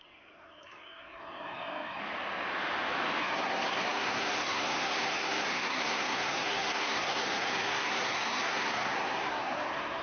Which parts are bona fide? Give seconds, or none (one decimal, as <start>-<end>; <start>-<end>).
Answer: 2.0-3.2